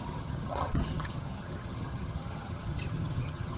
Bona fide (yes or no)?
no